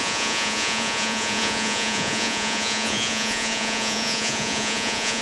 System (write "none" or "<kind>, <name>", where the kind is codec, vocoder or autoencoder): vocoder, Vocos